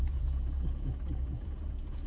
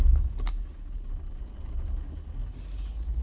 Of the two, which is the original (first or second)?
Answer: second